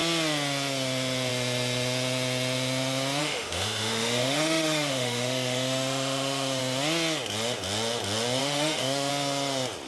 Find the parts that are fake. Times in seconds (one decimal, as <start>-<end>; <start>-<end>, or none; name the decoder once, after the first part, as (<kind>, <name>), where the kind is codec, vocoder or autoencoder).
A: 3.2-6.6 (autoencoder, DAC-VAE); 8.4-9.1